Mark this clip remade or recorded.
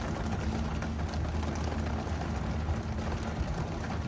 recorded